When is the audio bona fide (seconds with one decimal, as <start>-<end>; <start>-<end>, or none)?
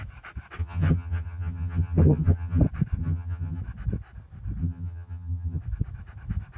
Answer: 0.0-0.6; 2.6-3.0; 3.6-4.6; 5.6-6.6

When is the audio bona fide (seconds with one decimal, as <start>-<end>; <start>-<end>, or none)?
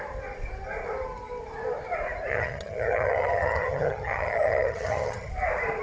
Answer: 0.0-2.3; 5.3-5.8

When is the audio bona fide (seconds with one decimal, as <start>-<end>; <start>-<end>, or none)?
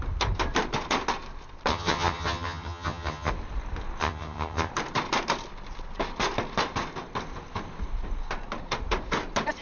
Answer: 0.0-1.7; 3.3-4.0; 4.7-9.6